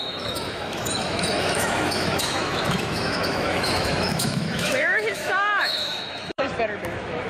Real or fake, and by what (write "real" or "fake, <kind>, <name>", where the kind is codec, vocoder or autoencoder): fake, autoencoder, DAC-VAE